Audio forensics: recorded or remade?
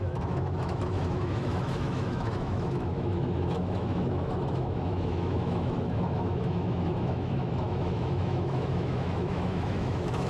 remade